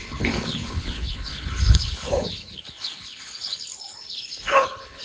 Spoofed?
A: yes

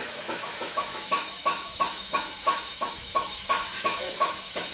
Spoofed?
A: yes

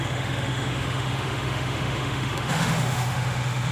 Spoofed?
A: yes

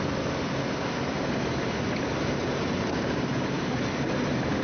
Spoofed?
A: no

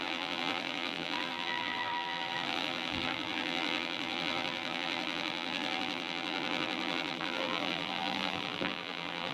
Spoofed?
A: yes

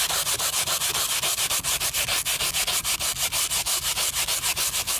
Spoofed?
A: no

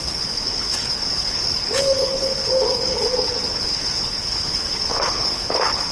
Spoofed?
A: yes